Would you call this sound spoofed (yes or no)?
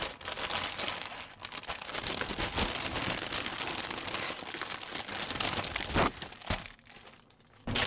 no